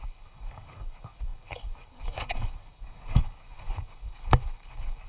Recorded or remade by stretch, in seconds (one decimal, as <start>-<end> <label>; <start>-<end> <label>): 0.0-5.1 remade